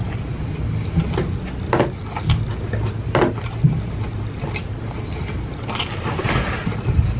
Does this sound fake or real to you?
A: real